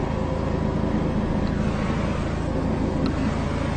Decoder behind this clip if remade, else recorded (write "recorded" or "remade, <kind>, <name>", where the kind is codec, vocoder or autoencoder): recorded